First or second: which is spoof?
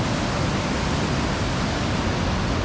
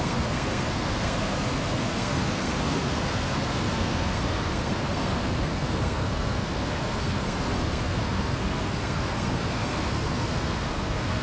second